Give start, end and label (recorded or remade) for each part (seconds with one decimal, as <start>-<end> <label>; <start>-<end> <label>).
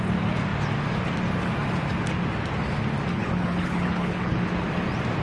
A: 0.0-3.1 recorded; 3.1-4.4 remade; 4.4-5.2 recorded